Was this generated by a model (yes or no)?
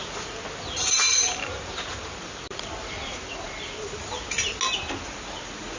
no